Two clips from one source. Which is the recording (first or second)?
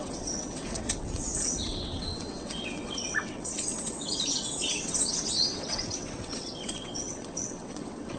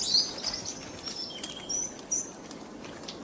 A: second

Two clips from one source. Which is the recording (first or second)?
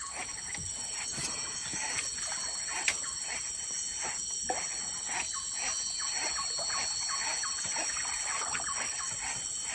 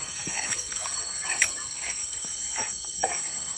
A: first